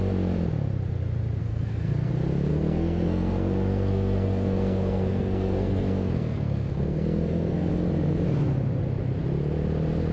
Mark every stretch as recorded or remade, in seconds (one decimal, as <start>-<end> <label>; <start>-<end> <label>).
0.0-1.4 recorded; 1.4-2.1 remade; 2.1-2.5 recorded; 2.5-7.7 remade; 7.7-10.1 recorded